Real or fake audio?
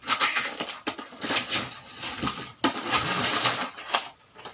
real